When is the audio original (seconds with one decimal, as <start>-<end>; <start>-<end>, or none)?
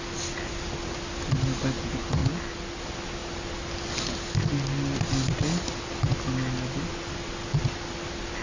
0.0-8.4